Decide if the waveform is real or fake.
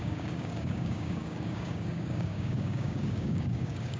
fake